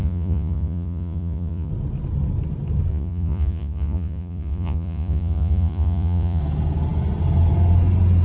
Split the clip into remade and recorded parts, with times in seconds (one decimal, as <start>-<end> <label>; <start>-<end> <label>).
0.0-1.7 remade; 1.7-2.9 recorded; 2.9-6.4 remade; 6.4-8.2 recorded